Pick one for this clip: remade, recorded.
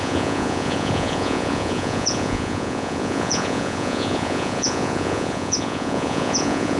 remade